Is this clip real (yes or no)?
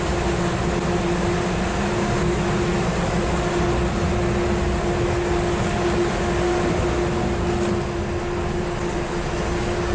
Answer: yes